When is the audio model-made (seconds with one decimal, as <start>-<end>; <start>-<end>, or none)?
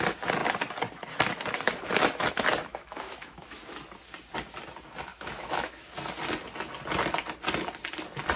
2.7-3.6; 5.1-5.9